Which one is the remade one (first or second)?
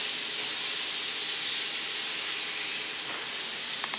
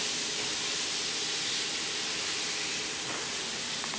second